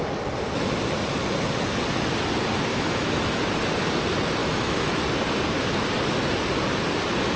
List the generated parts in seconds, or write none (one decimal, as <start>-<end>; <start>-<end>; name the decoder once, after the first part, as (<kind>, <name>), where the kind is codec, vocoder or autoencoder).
2.7-3.4 (autoencoder, DAC-VAE); 4.4-4.9